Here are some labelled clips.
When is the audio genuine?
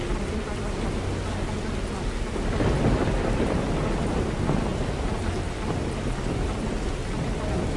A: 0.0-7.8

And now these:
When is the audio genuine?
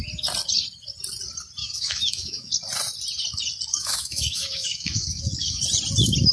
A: 0.0-1.6; 2.5-3.7; 5.6-6.3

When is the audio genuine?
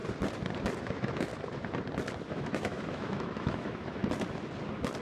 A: 0.0-0.8; 1.3-2.3; 4.0-5.0